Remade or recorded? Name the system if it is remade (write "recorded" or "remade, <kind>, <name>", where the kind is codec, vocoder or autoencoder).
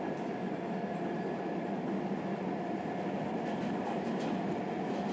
recorded